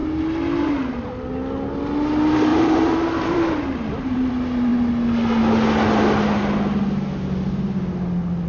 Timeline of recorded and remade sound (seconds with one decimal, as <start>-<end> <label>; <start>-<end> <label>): 0.0-2.5 recorded; 2.5-4.3 remade; 4.3-8.5 recorded